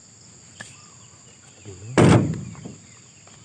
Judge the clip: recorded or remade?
recorded